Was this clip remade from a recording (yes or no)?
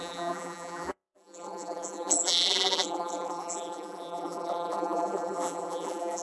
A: yes